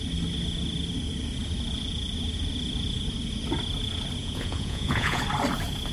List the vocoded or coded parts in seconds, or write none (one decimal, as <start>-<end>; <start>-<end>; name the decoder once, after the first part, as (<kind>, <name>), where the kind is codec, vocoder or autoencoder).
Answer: 4.2-5.2 (vocoder, Vocos)